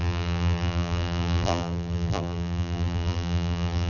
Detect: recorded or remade remade